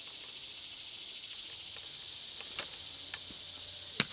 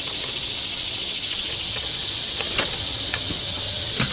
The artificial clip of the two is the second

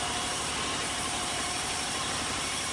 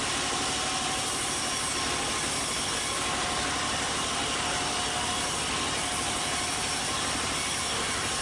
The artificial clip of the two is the first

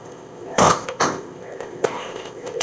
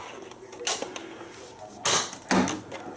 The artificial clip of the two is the first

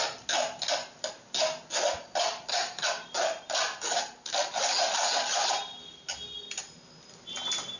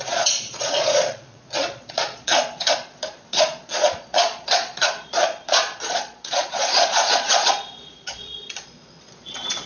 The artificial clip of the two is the second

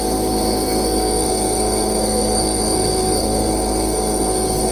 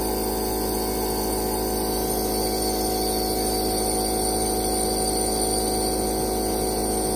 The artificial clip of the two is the first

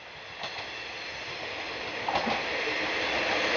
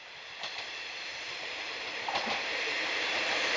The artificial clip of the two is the second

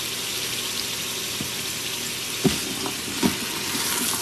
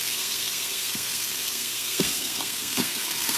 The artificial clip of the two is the second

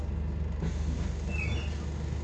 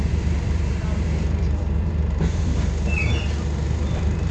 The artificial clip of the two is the second